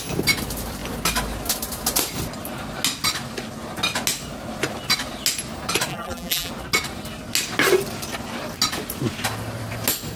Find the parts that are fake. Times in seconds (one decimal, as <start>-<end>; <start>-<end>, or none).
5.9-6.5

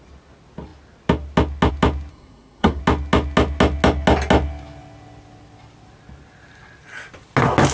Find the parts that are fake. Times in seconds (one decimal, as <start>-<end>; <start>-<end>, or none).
2.1-2.8

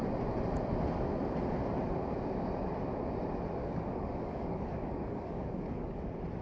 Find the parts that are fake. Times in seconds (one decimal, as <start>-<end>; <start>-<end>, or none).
3.6-6.0